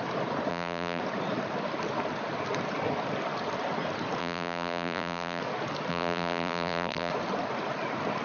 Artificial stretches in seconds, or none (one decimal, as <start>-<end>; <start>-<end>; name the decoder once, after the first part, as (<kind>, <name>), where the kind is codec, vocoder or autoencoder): 0.5-1.0 (vocoder, BigVGAN v2); 4.2-5.4; 5.9-7.1